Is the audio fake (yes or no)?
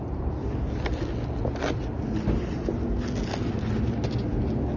no